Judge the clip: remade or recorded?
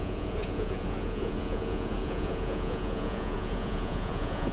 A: remade